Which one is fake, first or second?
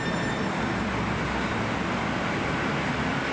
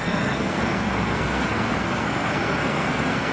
second